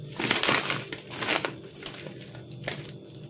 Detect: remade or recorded recorded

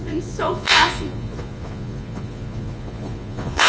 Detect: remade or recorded remade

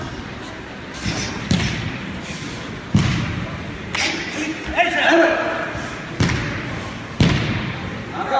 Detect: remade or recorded recorded